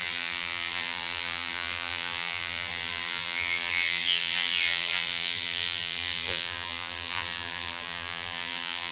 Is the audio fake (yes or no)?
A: yes